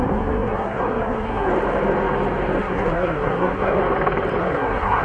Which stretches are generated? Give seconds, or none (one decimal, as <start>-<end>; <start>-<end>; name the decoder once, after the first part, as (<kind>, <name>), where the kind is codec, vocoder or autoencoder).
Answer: 0.0-1.5 (codec, SNAC); 2.6-3.8; 4.4-5.0